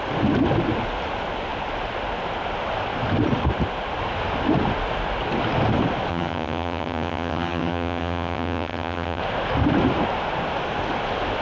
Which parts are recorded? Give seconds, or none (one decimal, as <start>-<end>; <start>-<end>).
0.0-6.1; 9.2-11.4